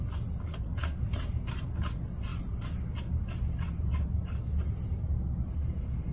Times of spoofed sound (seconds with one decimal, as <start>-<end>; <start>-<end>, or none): none

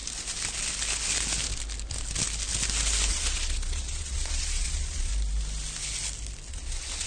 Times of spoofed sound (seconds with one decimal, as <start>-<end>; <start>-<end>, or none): 3.1-5.1; 6.5-7.1

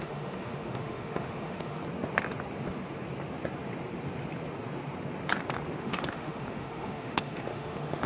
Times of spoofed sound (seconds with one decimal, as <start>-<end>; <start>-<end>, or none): 0.0-1.8; 5.8-8.1

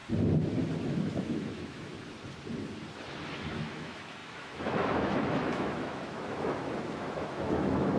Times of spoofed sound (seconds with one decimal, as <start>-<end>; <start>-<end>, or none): 0.8-1.9; 3.5-8.0

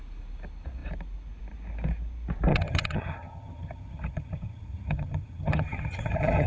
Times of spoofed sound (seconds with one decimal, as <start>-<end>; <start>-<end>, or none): 2.5-6.5

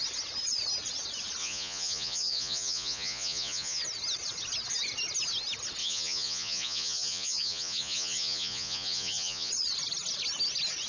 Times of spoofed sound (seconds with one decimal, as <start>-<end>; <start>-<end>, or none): 1.4-3.8; 5.8-9.5